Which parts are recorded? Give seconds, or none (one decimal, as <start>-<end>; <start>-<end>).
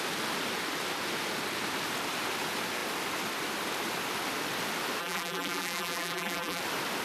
0.0-5.0; 6.6-7.0